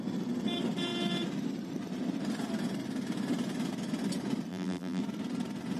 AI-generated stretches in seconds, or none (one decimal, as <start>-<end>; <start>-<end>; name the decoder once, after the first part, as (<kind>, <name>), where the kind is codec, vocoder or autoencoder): 4.5-5.0 (vocoder, BigVGAN v2)